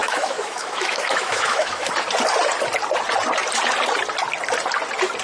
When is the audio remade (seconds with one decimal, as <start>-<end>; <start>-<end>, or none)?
0.0-1.9